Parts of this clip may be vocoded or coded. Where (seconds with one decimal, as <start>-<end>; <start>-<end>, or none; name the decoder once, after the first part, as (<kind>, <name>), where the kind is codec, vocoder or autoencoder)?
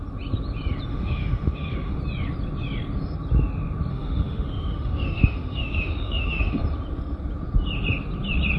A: 0.9-2.0 (autoencoder, DAC-VAE); 3.9-6.6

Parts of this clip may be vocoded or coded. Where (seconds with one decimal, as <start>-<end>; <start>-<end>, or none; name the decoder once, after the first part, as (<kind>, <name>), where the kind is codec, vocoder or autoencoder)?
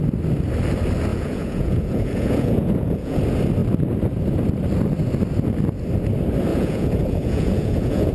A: 1.1-3.2 (vocoder, Vocos); 6.5-8.1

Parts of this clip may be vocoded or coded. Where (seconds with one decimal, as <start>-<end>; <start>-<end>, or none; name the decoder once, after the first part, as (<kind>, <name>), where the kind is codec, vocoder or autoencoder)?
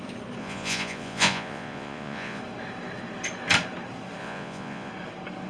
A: 0.4-2.4 (vocoder, Vocos); 4.2-4.9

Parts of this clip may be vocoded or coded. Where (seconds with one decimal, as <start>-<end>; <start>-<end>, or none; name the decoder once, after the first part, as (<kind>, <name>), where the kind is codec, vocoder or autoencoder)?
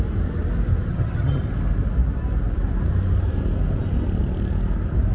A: 0.9-1.4 (vocoder, HiFi-GAN)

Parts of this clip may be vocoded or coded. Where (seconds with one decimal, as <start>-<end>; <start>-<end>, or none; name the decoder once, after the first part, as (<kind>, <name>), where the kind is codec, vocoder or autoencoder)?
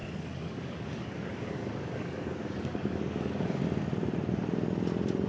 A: 0.0-3.6 (codec, DAC)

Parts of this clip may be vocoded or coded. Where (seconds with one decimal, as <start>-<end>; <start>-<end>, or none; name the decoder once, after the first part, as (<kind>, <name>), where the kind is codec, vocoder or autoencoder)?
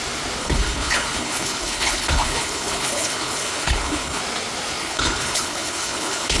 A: 0.4-4.2 (codec, HILCodec); 4.8-6.4